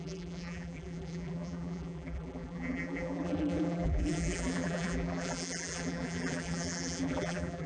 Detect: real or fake fake